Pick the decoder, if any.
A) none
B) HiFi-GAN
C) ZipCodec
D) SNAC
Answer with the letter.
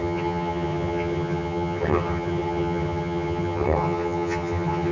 B